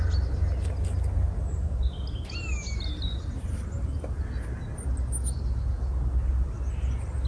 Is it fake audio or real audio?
real